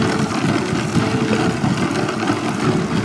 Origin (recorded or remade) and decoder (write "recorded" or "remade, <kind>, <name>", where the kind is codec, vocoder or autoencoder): recorded